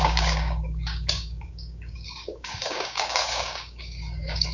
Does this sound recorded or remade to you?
remade